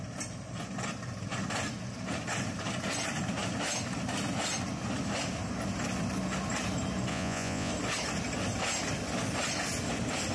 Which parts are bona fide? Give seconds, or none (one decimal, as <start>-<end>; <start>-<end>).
0.0-7.1; 7.7-10.3